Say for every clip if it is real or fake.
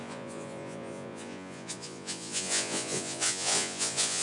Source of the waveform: fake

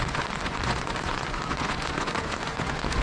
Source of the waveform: fake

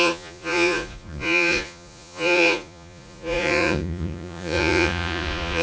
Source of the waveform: fake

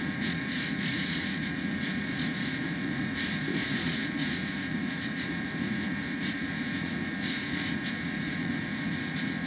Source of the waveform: fake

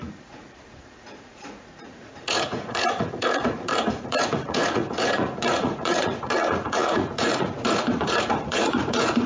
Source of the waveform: fake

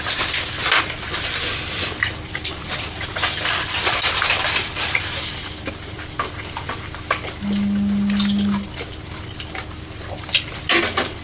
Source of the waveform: real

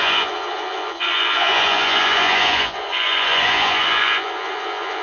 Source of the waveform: fake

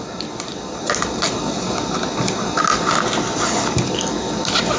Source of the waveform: real